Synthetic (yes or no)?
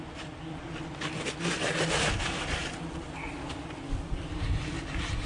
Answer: no